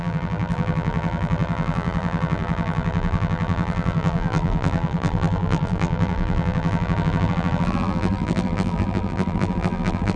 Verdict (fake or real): fake